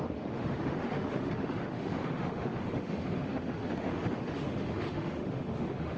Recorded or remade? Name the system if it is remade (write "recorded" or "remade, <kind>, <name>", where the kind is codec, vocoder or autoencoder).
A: remade, autoencoder, DAC-VAE